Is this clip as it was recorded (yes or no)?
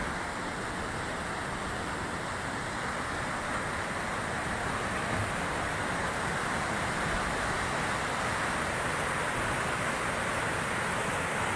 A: yes